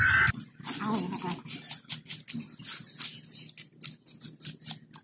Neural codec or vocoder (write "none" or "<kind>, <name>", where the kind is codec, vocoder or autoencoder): none